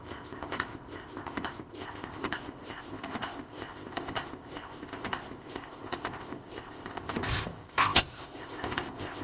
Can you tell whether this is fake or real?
fake